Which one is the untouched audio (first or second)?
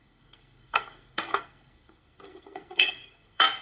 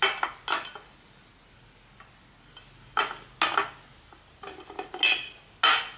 second